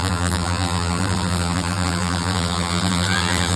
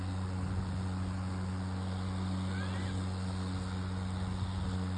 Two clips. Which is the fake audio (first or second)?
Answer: first